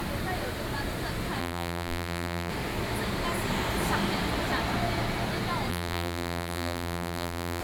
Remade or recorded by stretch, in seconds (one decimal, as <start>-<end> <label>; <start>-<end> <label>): 0.0-1.4 recorded; 1.4-2.5 remade; 2.5-5.7 recorded; 5.7-7.6 remade